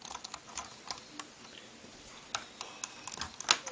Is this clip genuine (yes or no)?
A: yes